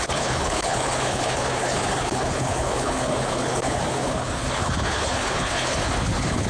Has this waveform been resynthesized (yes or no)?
yes